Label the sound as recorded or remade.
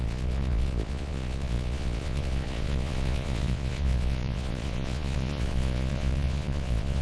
remade